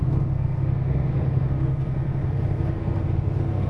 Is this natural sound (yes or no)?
no